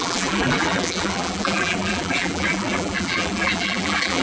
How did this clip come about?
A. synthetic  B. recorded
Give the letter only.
A